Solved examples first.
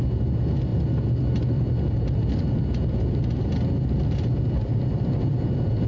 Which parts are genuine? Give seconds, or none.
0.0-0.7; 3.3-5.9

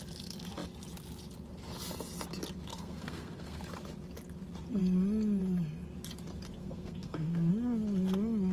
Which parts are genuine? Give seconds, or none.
0.0-2.7; 3.6-6.6; 7.5-8.5

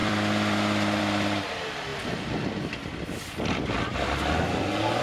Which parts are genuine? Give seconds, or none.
1.0-5.0